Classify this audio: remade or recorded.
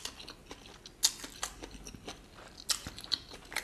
recorded